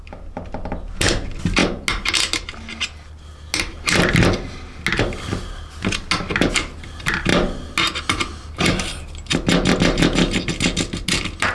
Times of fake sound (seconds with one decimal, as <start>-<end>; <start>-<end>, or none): none